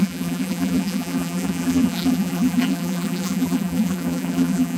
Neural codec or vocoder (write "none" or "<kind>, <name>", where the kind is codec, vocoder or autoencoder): vocoder, BigVGAN v2